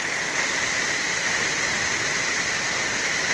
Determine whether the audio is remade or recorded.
recorded